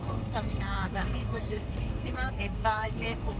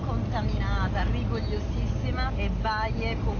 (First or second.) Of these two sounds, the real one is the second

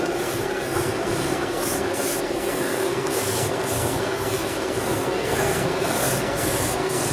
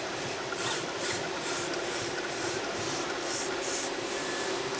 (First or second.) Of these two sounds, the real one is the second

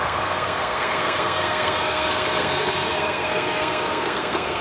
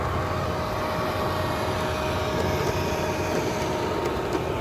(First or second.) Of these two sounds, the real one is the second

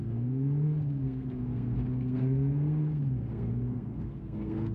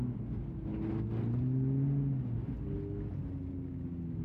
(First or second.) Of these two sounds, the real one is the second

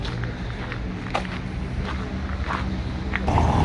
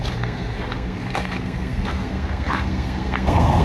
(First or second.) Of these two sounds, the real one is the first